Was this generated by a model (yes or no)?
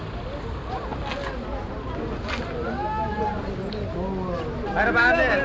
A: no